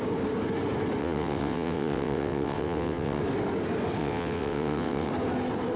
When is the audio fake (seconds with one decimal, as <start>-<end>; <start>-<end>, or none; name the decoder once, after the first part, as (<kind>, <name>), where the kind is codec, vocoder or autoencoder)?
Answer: 1.0-3.2 (vocoder, WaveNeXt); 4.0-5.1